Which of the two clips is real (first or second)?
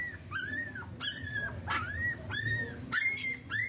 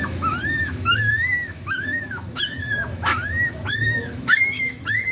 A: first